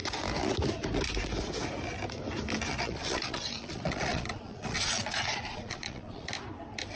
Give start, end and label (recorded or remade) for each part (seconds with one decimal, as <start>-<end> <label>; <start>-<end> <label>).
0.0-2.7 recorded; 2.7-6.3 remade; 6.3-7.0 recorded